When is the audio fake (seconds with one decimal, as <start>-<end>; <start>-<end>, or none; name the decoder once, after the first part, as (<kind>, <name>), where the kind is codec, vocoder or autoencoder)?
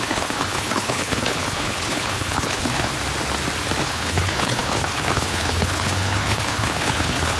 0.0-2.9 (codec, HILCodec); 3.8-7.4